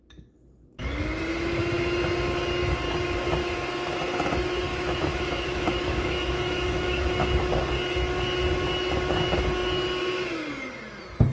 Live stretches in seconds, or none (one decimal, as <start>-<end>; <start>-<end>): 0.0-4.7; 7.6-11.3